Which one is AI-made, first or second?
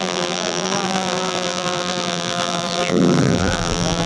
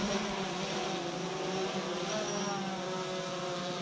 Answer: first